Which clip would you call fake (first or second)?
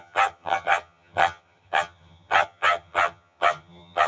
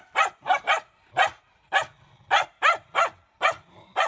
first